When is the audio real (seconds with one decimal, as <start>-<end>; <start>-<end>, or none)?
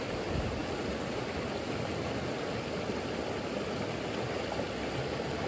0.0-5.5